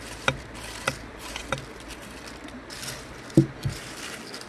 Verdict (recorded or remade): recorded